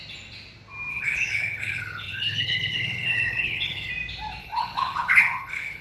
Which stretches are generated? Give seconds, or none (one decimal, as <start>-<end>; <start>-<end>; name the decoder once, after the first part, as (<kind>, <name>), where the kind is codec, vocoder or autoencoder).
0.9-3.9 (codec, HILCodec); 4.4-5.8